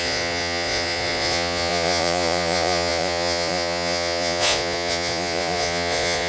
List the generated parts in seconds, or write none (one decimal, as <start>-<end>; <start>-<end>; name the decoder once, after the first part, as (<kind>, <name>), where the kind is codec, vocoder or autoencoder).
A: 0.0-6.3 (vocoder, Vocos)